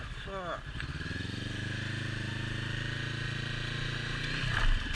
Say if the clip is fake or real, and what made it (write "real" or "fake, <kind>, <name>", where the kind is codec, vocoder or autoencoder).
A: real